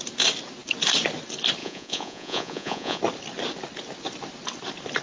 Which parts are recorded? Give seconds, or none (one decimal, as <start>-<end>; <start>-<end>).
0.0-1.6; 3.0-5.0